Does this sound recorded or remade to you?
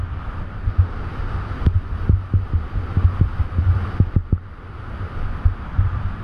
recorded